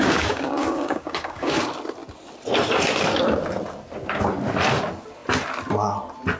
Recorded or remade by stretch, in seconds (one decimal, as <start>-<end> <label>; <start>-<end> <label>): 0.0-1.6 remade; 1.6-6.4 recorded